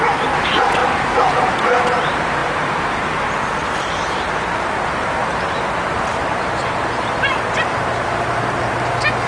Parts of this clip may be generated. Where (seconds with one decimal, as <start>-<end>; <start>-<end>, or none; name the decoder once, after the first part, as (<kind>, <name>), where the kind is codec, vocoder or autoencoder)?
0.8-1.5 (vocoder, BigVGAN v2); 2.4-3.6; 5.2-8.4